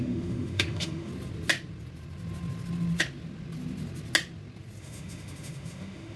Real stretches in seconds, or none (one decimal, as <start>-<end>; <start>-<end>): 1.1-4.8

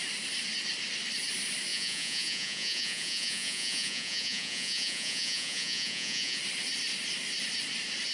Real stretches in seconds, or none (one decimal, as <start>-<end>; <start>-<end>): 0.0-1.7; 6.4-8.1

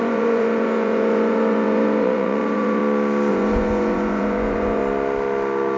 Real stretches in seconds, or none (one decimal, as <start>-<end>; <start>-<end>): 2.8-3.3; 4.8-5.8

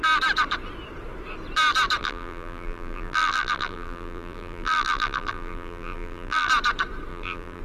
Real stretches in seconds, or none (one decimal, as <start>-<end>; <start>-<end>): 0.0-2.0; 6.5-7.1

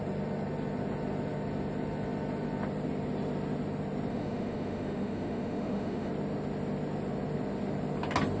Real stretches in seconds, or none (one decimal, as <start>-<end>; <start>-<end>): 0.0-4.1; 6.1-8.4

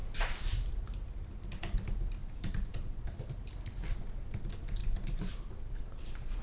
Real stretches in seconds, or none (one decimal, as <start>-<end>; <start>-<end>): 0.7-2.2; 3.2-4.8

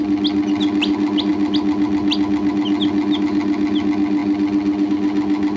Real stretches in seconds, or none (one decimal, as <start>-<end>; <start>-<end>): 0.0-5.6